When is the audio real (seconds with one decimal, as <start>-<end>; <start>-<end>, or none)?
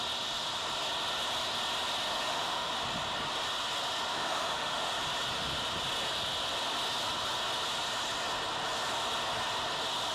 0.0-2.1; 2.7-4.1; 4.9-10.1